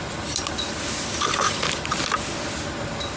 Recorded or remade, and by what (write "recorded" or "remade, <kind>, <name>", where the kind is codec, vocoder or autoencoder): recorded